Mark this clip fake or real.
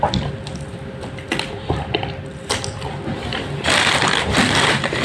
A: fake